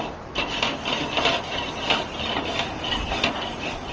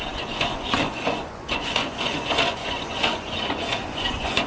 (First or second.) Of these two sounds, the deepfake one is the second